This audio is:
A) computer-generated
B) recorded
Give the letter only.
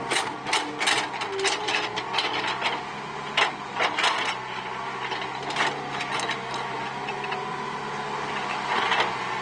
B